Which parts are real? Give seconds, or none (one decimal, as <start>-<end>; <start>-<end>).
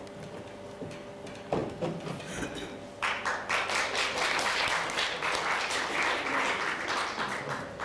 0.0-7.8